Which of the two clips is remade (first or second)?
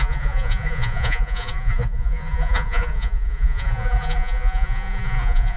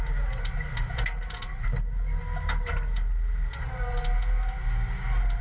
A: first